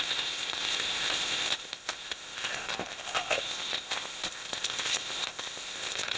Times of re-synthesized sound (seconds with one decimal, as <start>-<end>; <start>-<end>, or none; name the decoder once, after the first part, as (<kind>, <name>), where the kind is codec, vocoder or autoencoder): 0.0-6.2 (codec, ZipCodec)